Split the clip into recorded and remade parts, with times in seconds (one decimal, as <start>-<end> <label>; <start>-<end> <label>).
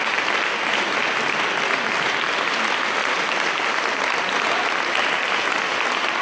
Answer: 0.0-6.2 recorded